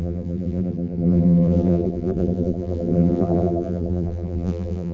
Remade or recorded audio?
remade